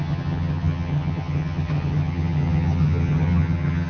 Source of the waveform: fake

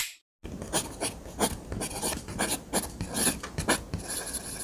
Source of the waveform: real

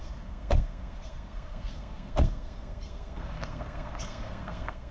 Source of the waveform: fake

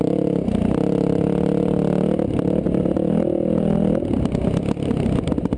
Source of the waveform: real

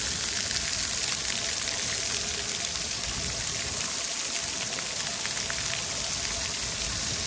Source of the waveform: real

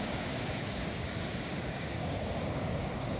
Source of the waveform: fake